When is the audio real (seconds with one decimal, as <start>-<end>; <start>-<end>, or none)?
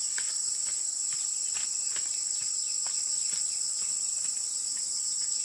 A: 0.0-5.4